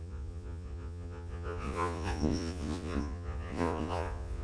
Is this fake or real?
fake